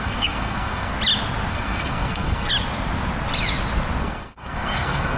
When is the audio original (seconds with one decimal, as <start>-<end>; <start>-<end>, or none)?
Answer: 0.9-1.5; 2.5-4.0